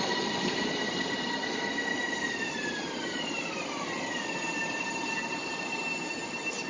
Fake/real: fake